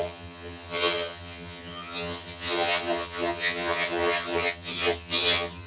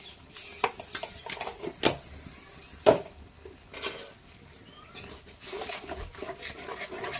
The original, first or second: second